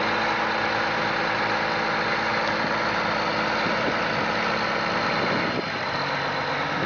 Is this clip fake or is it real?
real